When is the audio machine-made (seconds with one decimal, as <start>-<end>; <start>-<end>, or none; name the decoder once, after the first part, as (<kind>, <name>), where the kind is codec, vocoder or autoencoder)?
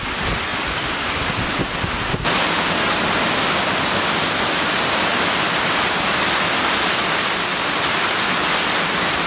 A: none